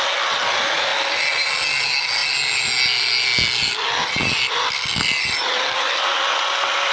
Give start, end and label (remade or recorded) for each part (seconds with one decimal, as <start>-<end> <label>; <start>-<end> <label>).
0.0-6.9 recorded